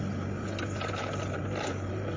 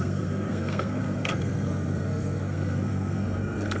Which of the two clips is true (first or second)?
first